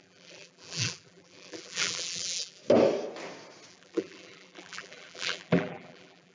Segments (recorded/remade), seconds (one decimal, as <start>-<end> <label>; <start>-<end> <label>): 0.0-2.6 remade; 2.6-3.7 recorded; 3.7-6.3 remade